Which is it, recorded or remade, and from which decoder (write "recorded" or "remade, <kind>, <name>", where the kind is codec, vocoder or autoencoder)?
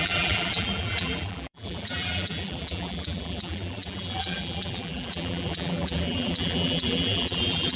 remade, vocoder, BigVGAN v2